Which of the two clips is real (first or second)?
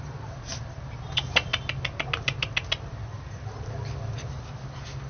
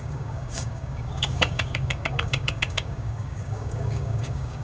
first